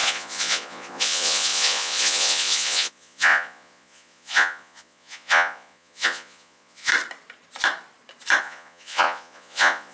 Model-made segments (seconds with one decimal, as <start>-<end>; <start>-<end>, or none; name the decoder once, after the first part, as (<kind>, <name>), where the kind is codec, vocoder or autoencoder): 0.0-6.9 (vocoder, Vocos); 8.4-9.9